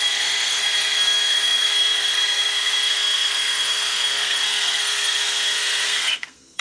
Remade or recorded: remade